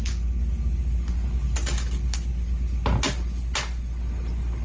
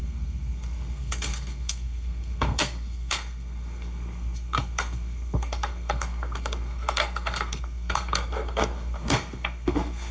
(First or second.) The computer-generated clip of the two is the second